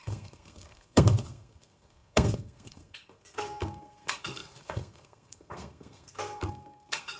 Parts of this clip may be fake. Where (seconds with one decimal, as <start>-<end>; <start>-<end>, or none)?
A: 0.0-7.2